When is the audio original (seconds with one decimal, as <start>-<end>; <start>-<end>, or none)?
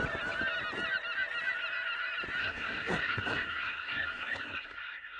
0.0-2.4